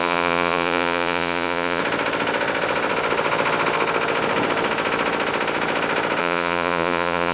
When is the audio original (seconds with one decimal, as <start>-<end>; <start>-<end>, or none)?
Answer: 1.8-6.2